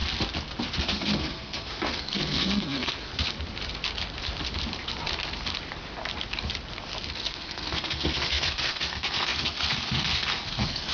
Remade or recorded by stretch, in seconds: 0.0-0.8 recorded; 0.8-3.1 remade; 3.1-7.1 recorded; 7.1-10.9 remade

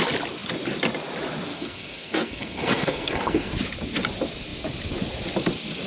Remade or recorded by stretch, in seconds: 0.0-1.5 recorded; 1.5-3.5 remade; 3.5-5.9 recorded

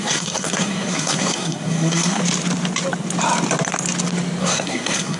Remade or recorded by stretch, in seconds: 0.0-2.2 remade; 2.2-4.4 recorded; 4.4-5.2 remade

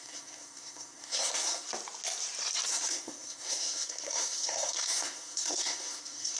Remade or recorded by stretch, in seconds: 0.0-1.7 remade; 1.7-2.7 recorded; 2.7-6.4 remade

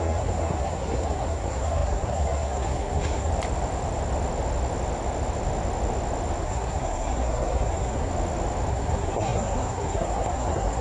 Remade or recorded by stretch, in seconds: 0.0-3.3 remade; 3.3-6.4 recorded; 6.4-8.1 remade; 8.1-8.7 recorded; 8.7-10.8 remade

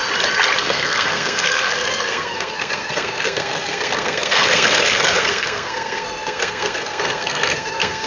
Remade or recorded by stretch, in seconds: 0.0-0.6 recorded; 0.6-8.1 remade

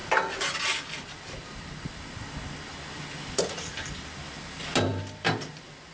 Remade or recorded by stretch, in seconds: 0.0-5.9 recorded

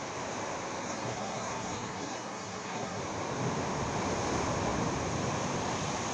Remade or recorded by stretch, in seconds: 0.0-0.8 recorded; 0.8-3.0 remade; 3.0-6.1 recorded